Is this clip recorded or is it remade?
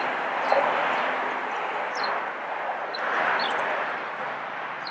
recorded